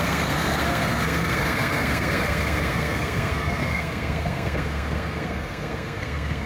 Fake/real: fake